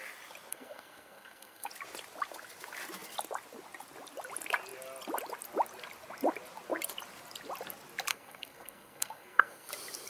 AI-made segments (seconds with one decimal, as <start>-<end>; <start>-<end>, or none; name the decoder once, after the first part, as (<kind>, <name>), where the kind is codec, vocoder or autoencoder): 0.5-1.7 (codec, SNAC); 8.1-9.7